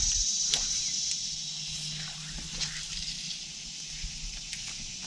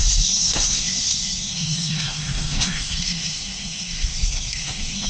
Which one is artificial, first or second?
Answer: second